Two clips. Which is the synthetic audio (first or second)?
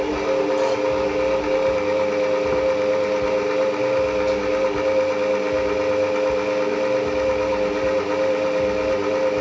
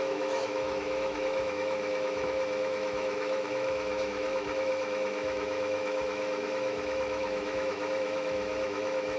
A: second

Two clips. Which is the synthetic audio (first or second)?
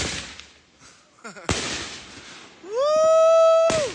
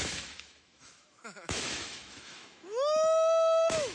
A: second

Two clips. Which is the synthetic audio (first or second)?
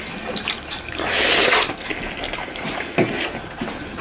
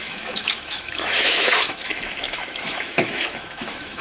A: second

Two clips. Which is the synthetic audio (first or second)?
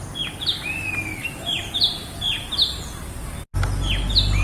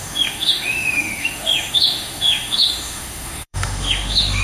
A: second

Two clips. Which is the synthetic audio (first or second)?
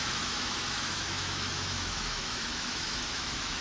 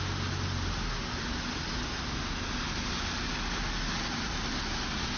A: first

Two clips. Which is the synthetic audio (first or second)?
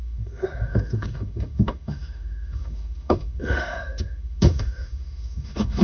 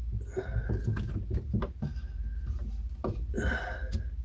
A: first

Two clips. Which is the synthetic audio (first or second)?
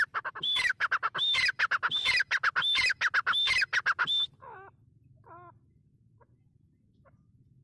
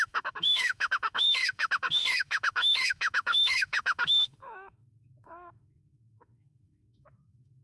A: second